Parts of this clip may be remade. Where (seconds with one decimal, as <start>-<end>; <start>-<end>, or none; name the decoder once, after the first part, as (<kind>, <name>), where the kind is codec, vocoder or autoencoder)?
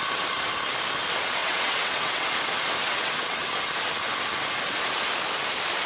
1.4-2.3 (vocoder, WaveNeXt); 2.8-3.5